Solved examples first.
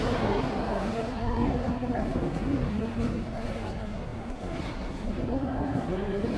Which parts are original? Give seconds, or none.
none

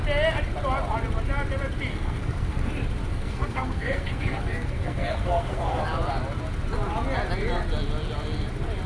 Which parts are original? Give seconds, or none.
0.0-1.9; 2.7-3.1; 5.8-8.9

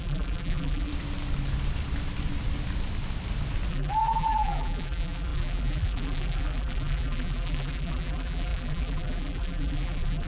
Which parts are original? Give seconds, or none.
0.9-3.7